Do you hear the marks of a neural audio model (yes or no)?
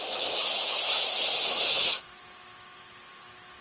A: yes